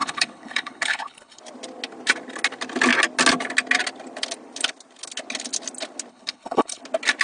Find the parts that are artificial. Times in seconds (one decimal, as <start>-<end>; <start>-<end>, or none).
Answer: 0.0-1.4; 6.1-6.8